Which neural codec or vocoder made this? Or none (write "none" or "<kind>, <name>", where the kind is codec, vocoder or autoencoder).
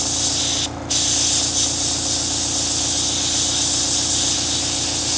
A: none